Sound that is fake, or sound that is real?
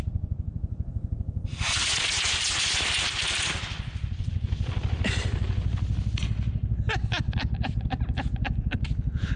fake